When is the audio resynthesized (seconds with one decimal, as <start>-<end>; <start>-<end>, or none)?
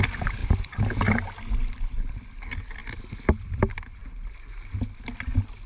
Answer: none